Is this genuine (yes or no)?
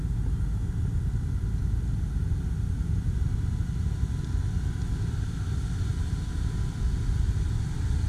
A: yes